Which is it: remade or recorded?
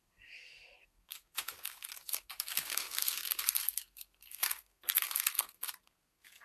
remade